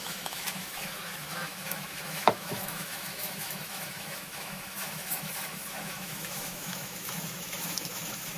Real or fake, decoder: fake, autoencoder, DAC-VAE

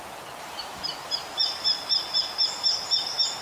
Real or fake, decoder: real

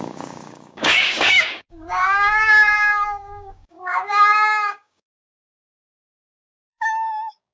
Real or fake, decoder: fake, codec, DAC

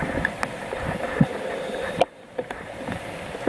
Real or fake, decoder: real